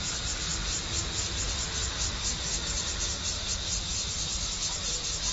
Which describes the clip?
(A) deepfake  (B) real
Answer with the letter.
B